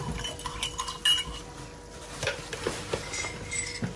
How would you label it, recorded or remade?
recorded